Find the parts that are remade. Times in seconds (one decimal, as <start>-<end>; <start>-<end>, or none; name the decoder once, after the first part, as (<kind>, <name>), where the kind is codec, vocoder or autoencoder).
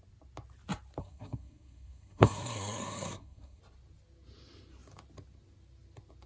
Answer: 1.0-3.6 (codec, SNAC)